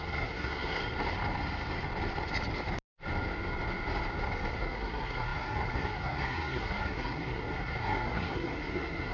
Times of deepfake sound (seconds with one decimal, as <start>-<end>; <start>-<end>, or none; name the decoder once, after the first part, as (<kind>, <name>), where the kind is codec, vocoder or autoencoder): 0.0-0.8 (codec, SNAC); 4.5-9.1